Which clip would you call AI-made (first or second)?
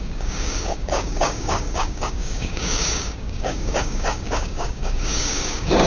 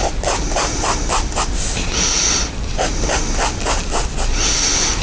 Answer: first